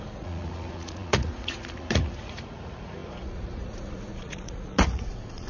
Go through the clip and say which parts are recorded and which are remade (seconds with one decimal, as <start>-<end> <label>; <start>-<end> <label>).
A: 0.0-5.5 remade